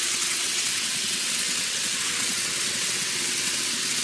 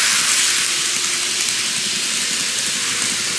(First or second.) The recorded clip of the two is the second